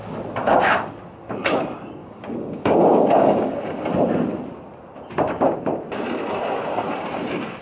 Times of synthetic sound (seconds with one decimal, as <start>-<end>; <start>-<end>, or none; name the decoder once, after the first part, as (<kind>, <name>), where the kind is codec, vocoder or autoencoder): 0.4-0.9 (codec, DAC); 2.0-3.5